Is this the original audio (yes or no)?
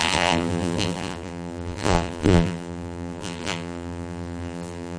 no